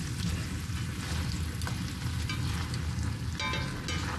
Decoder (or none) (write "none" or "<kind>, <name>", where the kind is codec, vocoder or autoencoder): none